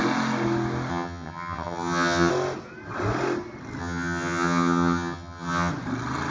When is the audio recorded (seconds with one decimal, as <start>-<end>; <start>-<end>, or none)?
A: 0.0-0.9; 2.3-3.8; 5.7-6.3